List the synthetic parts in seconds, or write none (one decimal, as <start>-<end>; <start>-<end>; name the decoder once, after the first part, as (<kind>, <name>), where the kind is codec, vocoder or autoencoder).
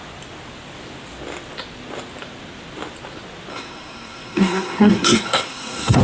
3.5-6.0 (codec, SNAC)